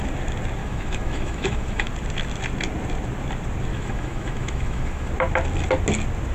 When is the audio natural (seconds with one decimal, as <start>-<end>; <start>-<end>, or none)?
0.0-0.6; 1.9-3.7; 5.1-6.3